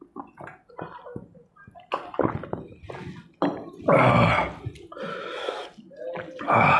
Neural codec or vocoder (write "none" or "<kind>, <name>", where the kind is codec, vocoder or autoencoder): none